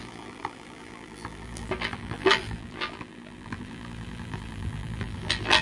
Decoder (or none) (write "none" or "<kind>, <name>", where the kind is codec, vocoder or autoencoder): vocoder, BigVGAN v2